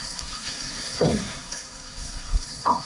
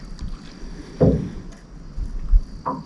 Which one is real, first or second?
second